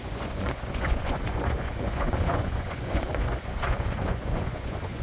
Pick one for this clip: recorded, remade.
remade